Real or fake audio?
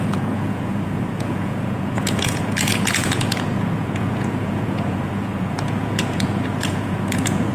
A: fake